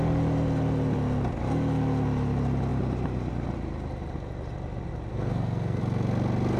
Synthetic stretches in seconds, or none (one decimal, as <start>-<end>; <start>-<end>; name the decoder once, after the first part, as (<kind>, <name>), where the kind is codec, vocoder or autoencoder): 5.1-5.8 (codec, SNAC)